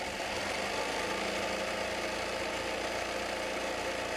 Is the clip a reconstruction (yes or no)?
no